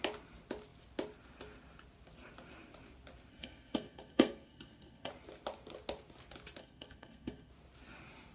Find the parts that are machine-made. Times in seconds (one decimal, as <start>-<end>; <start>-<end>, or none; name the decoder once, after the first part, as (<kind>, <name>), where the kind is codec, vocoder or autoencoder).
3.3-5.1 (codec, SNAC); 6.6-7.5